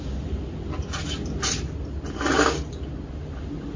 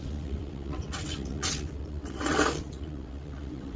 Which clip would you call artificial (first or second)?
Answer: second